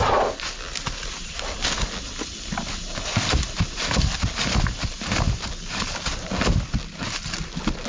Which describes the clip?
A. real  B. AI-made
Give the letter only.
A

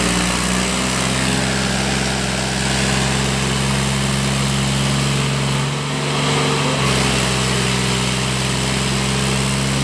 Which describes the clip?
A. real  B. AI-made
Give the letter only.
A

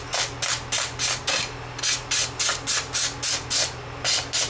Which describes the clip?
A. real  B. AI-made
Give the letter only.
A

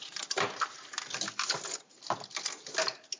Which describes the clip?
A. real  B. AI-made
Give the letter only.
A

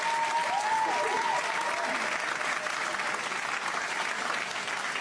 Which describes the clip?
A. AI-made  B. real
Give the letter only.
B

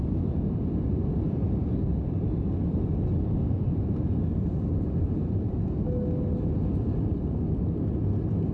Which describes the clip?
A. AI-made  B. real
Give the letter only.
B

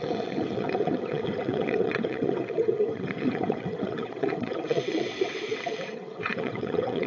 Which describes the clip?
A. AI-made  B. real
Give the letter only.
A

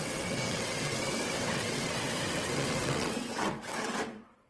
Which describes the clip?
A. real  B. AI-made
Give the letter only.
B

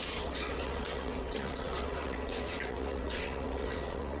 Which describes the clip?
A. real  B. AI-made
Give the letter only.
B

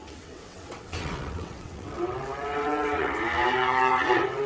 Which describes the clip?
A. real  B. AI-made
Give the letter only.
B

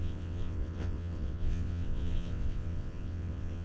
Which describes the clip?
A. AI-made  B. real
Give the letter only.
A